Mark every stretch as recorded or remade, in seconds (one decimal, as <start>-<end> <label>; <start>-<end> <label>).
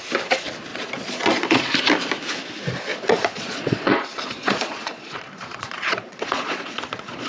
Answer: 0.0-0.7 recorded; 0.7-1.7 remade; 1.7-2.9 recorded; 2.9-7.3 remade